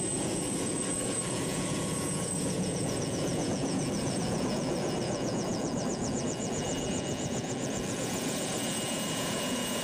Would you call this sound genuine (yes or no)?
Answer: no